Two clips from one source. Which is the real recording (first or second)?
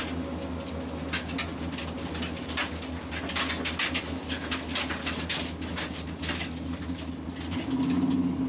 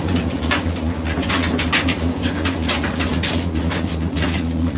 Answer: first